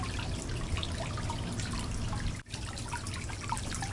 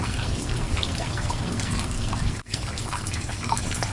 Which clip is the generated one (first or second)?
second